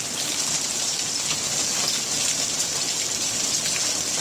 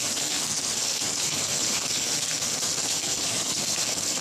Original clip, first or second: first